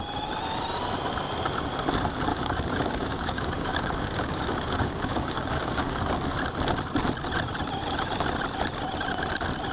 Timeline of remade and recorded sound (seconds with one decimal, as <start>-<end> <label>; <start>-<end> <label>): 0.0-2.3 recorded; 2.3-6.1 remade; 6.1-9.7 recorded